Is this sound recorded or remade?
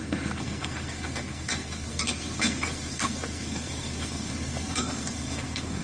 remade